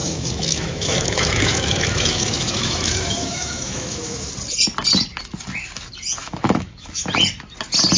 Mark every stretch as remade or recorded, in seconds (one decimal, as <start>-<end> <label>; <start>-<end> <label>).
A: 0.0-4.3 remade; 4.3-6.2 recorded; 6.2-7.0 remade; 7.0-8.0 recorded